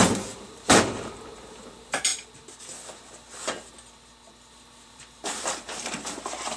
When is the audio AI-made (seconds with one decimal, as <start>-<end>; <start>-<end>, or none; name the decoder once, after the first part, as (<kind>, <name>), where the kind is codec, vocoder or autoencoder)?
0.0-2.1 (vocoder, BigVGAN v2); 4.5-6.6